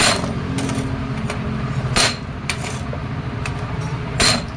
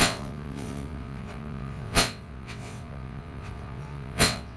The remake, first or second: second